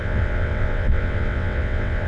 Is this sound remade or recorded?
remade